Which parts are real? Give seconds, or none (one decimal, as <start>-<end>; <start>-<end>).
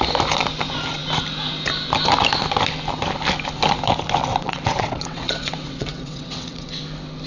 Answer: 0.0-4.3; 6.8-7.3